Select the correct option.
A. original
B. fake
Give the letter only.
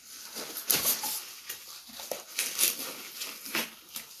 A